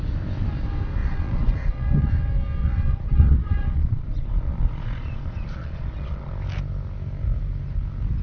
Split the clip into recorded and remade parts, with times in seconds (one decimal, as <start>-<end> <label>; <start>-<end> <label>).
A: 0.0-1.0 recorded; 1.0-2.1 remade; 2.1-2.6 recorded; 2.6-6.3 remade; 6.3-8.2 recorded